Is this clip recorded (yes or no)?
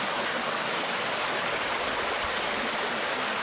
yes